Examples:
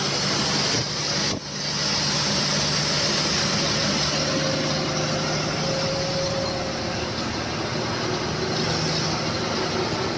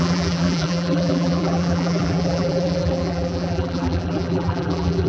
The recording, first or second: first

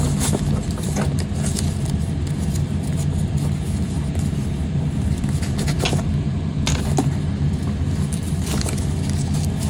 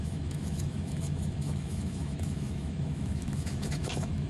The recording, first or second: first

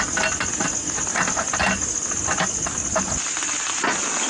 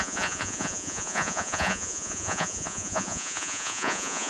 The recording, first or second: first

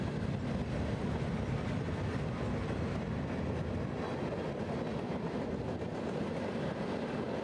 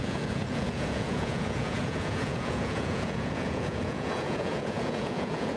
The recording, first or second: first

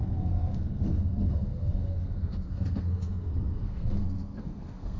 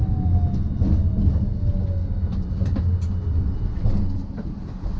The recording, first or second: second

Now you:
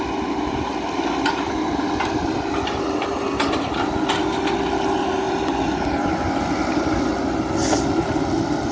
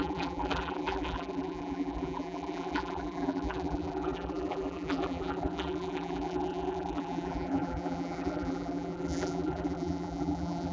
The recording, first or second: first